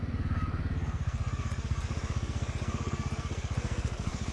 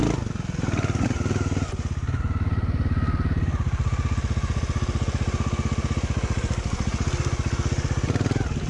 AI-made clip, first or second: first